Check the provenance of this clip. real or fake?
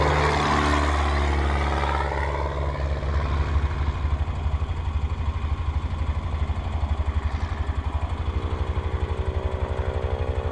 real